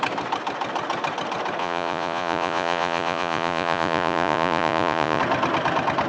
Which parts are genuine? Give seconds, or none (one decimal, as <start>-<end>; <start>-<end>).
0.0-1.6; 5.2-6.1